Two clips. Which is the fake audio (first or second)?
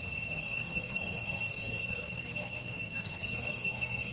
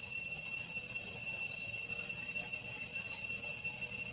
first